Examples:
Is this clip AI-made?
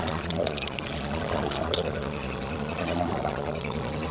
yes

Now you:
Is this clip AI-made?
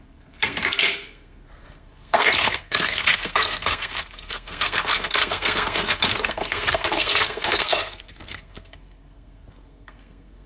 yes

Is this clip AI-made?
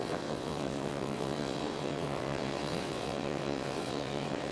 yes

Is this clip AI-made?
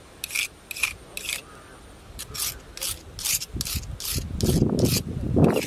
no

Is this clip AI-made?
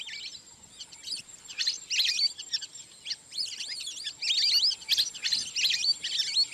no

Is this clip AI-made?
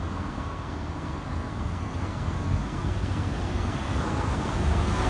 yes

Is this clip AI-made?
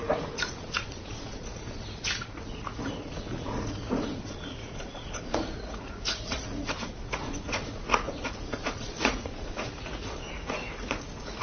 yes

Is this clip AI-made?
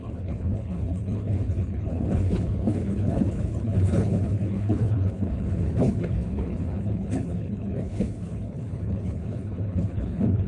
yes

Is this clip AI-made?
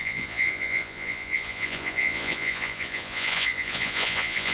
yes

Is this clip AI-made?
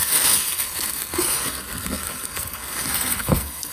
yes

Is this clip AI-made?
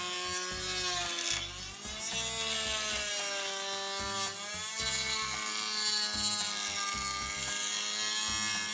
no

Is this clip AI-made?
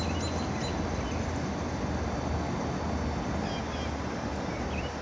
no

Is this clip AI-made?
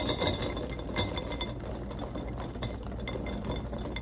no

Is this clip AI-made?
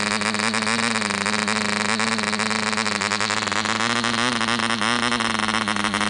no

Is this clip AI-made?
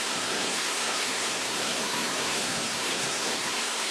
yes